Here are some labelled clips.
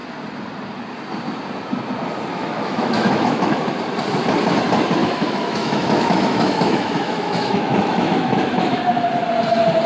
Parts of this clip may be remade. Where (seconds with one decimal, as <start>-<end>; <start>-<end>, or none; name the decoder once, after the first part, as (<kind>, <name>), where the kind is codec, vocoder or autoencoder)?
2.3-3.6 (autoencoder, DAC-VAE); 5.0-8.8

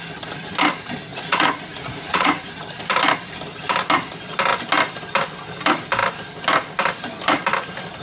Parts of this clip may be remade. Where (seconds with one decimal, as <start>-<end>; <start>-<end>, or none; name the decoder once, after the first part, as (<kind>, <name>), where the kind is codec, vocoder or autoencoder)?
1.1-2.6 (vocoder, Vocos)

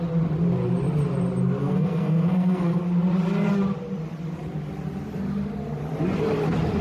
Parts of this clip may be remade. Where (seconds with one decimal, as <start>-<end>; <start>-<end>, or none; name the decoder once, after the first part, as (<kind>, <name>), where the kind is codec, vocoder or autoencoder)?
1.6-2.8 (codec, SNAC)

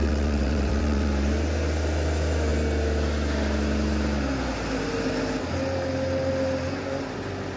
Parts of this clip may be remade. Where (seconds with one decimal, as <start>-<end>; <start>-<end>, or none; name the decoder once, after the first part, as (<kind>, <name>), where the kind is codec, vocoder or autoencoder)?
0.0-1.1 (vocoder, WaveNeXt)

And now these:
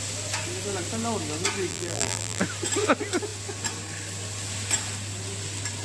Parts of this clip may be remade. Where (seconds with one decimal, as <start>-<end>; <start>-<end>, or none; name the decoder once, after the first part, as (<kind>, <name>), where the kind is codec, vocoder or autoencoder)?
1.7-2.4 (vocoder, BigVGAN v2)

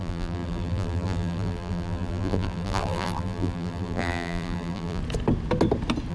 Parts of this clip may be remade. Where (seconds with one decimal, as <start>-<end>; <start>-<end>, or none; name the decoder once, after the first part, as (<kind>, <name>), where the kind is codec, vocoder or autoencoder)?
0.0-5.0 (vocoder, BigVGAN v2)